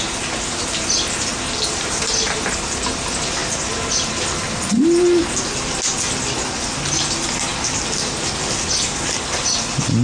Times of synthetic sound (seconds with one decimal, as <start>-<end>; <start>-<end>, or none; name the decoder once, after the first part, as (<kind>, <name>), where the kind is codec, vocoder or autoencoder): none